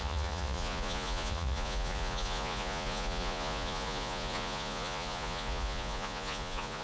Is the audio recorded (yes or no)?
no